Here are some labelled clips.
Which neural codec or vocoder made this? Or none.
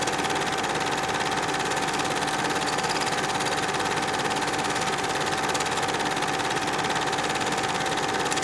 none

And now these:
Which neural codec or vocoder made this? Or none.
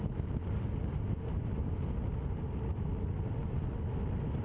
none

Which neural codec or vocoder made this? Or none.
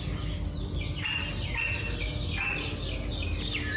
none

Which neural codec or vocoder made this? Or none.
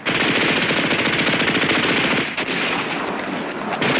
none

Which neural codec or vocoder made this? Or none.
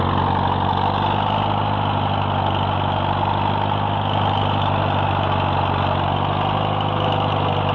none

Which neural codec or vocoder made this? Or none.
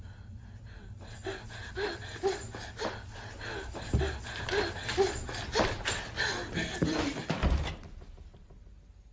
none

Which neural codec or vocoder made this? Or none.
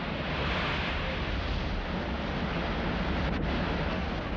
none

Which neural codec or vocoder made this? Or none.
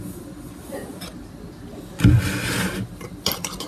none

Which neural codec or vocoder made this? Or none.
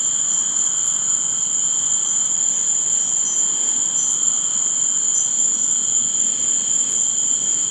none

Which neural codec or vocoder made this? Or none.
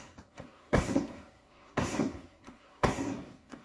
codec, SNAC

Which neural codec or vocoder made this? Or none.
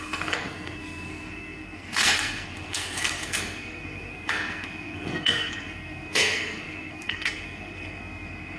codec, SNAC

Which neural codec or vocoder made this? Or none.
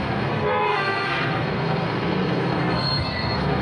codec, SNAC